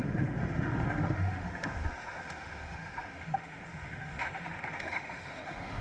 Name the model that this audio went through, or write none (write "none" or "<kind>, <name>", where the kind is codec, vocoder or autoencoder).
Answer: autoencoder, DAC-VAE